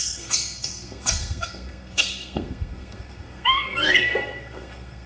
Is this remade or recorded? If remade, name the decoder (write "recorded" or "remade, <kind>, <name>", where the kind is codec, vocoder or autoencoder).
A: remade, codec, SNAC